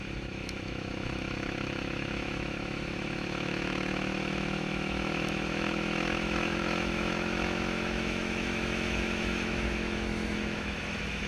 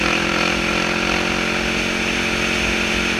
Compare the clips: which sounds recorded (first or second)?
second